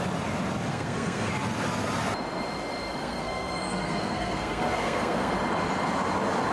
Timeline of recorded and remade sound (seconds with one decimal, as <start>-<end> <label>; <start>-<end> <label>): 0.0-0.7 recorded; 0.7-1.3 remade; 1.3-3.0 recorded; 3.0-5.3 remade; 5.3-6.5 recorded